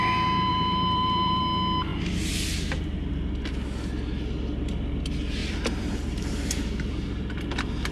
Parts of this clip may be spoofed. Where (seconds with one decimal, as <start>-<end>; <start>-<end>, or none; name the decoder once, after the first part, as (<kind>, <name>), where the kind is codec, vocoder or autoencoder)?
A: 0.5-1.4 (vocoder, BigVGAN v2); 5.4-7.3